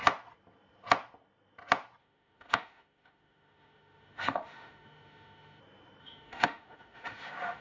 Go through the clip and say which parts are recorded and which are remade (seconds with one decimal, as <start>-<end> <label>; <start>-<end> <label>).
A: 0.0-2.0 recorded; 2.0-5.6 remade; 5.6-6.0 recorded; 6.0-7.6 remade